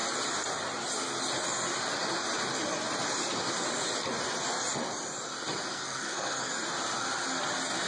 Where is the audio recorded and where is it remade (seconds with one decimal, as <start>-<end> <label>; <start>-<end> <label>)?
0.0-5.7 recorded; 5.7-6.5 remade; 6.5-7.9 recorded